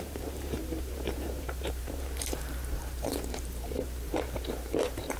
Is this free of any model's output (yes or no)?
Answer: no